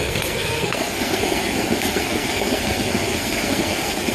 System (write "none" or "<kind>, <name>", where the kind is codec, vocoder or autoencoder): codec, SNAC